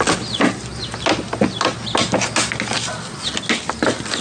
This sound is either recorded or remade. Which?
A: recorded